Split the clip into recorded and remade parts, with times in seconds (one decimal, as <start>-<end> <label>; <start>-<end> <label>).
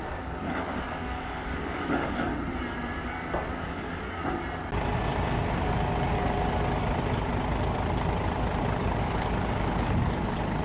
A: 0.0-2.3 remade; 2.3-3.5 recorded; 3.5-4.2 remade; 4.2-8.6 recorded; 8.6-10.6 remade